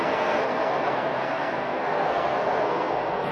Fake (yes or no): yes